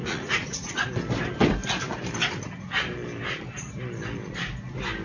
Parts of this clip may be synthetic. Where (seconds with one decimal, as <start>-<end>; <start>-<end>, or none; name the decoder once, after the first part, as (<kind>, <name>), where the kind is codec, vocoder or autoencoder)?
0.0-0.7 (vocoder, Vocos)